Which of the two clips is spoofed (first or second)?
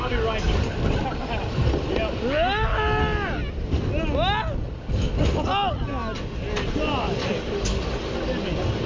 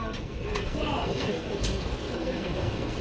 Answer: second